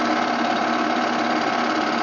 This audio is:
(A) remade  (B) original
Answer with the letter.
B